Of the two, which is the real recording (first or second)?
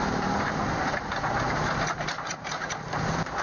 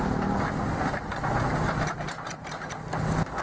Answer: second